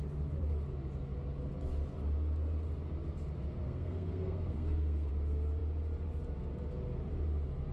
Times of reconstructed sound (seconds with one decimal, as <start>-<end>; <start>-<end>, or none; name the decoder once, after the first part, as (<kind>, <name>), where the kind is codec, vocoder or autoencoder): 3.6-5.1 (codec, SNAC)

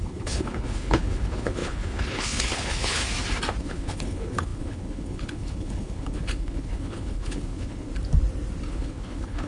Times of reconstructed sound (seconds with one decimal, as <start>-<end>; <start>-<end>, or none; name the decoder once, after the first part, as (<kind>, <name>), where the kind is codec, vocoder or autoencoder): 0.0-3.0 (codec, HILCodec); 3.6-7.9; 8.7-9.5

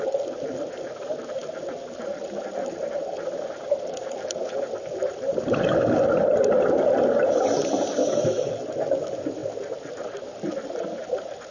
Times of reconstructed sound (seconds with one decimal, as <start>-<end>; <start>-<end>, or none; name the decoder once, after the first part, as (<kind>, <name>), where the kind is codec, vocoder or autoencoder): 8.0-8.5 (autoencoder, DAC-VAE)

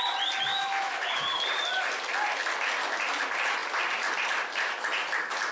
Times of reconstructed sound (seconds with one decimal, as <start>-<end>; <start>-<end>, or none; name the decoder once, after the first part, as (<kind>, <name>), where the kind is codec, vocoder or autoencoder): 0.5-1.2 (autoencoder, DAC-VAE)